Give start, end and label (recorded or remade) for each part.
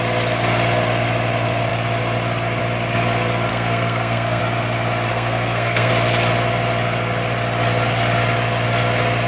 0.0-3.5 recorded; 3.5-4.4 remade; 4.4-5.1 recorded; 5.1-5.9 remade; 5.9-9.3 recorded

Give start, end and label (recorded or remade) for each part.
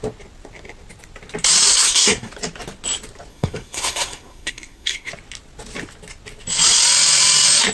0.0-1.7 recorded; 1.7-2.3 remade; 2.3-3.3 recorded; 3.3-5.1 remade; 5.1-7.7 recorded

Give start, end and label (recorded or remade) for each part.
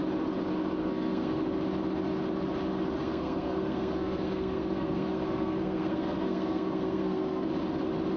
0.0-0.8 recorded; 0.8-1.4 remade; 1.4-3.0 recorded; 3.0-7.5 remade; 7.5-8.2 recorded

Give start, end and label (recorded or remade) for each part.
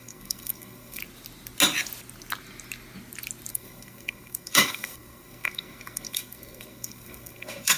0.0-1.0 remade; 1.0-3.5 recorded; 3.5-7.8 remade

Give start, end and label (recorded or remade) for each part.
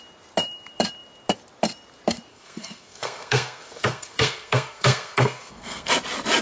0.0-2.3 recorded; 2.3-5.9 remade; 5.9-6.4 recorded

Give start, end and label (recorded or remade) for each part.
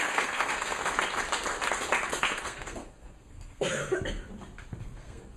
0.0-0.8 remade; 0.8-2.2 recorded; 2.2-3.8 remade; 3.8-4.8 recorded; 4.8-5.4 remade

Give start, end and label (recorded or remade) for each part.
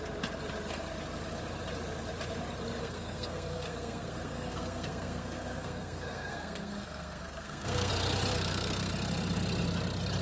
0.0-2.8 recorded; 2.8-7.9 remade; 7.9-8.3 recorded; 8.3-8.9 remade; 8.9-10.2 recorded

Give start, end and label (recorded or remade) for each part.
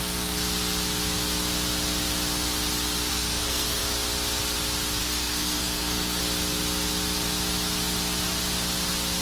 0.0-3.1 recorded; 3.1-3.8 remade; 3.8-5.0 recorded; 5.0-6.2 remade; 6.2-9.2 recorded